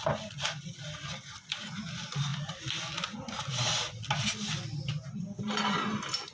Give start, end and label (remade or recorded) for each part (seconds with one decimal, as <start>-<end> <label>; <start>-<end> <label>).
0.0-6.3 recorded